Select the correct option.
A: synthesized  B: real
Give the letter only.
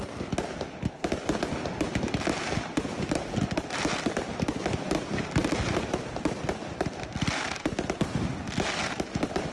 B